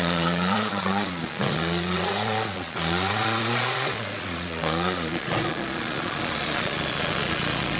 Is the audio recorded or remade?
remade